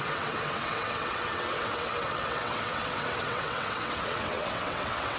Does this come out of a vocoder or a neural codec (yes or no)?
yes